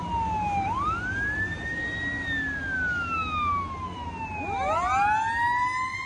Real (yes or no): yes